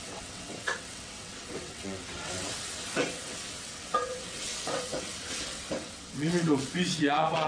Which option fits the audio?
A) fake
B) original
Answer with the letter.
A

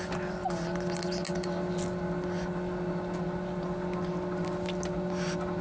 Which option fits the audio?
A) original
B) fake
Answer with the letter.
A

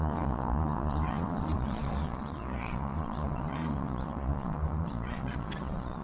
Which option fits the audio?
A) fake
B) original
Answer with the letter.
A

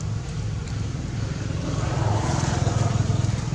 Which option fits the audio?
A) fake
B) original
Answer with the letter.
A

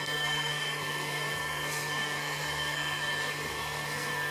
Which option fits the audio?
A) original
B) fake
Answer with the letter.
B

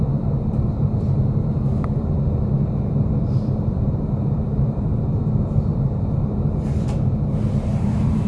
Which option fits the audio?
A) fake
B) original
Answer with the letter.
A